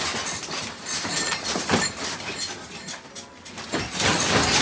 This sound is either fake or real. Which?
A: real